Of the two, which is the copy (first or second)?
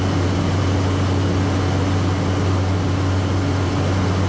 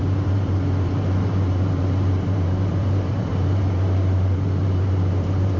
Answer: second